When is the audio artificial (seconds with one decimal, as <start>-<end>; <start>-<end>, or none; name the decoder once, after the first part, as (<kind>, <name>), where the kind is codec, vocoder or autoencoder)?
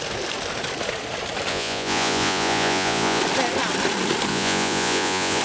1.5-3.2 (vocoder, Vocos); 4.3-5.4